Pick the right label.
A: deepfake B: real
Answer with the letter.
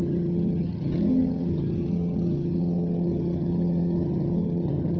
A